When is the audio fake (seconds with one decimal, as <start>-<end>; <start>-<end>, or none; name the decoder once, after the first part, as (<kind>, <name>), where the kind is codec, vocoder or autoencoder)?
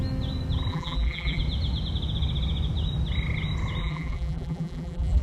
0.7-1.4 (vocoder, BigVGAN v2); 3.8-5.2